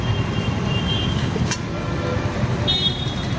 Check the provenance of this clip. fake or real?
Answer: real